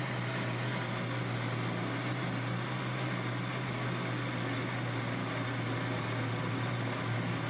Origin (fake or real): real